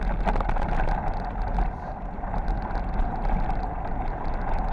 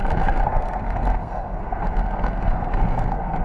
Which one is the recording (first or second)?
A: first